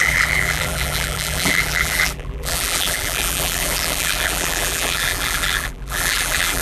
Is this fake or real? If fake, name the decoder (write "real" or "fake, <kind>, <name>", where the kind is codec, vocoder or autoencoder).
fake, vocoder, BigVGAN v2